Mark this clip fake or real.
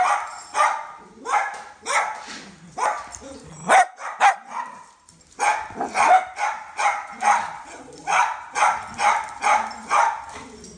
real